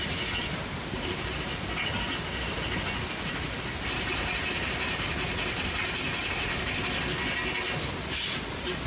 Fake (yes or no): no